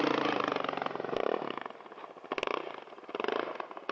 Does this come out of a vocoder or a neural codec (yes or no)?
no